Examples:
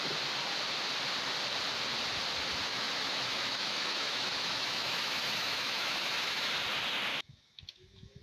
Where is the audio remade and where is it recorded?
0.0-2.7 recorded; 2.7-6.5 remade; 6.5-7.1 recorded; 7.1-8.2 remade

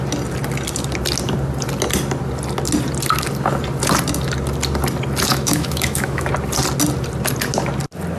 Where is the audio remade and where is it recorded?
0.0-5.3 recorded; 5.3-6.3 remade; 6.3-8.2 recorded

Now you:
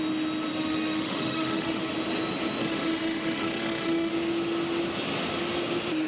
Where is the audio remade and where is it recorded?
0.0-0.5 recorded; 0.5-1.8 remade; 1.8-2.6 recorded; 2.6-4.1 remade; 4.1-6.1 recorded